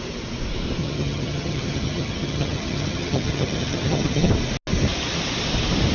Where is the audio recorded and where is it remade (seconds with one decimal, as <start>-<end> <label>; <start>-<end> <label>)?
0.0-0.8 recorded; 0.8-4.3 remade; 4.3-5.9 recorded